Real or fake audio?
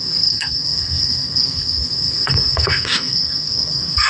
fake